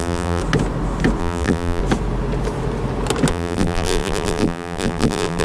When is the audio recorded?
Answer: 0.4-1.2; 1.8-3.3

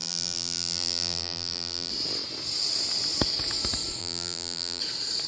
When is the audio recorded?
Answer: 1.9-4.0; 4.8-5.3

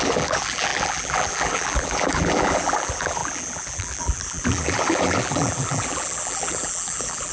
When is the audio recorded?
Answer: none

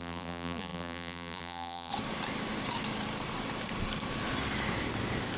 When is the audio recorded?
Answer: 1.9-5.4

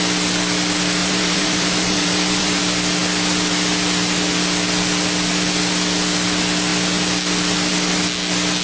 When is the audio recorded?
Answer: 0.0-1.0; 2.6-8.6

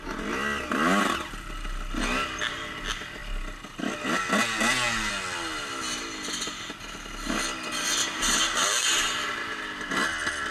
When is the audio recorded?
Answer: 0.0-8.0; 9.0-10.5